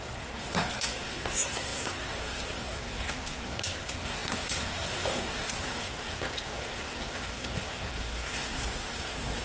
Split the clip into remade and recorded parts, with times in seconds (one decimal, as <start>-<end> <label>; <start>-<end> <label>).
0.0-9.4 remade